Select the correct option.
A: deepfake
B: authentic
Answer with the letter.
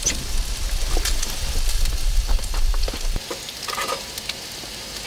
A